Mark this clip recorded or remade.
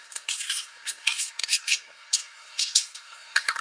remade